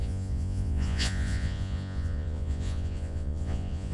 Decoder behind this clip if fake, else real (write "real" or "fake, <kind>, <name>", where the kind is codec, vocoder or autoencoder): fake, vocoder, Vocos